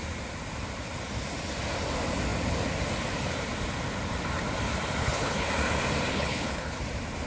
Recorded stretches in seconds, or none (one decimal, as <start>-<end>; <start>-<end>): 0.0-5.0; 5.5-6.1; 6.8-7.3